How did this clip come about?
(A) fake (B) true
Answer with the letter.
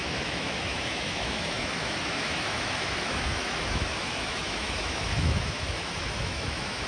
A